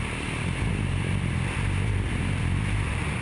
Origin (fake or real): real